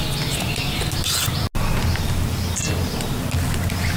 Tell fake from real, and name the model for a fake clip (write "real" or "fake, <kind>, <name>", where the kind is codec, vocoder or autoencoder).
real